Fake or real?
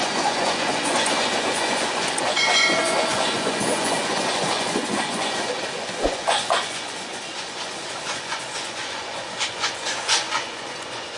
fake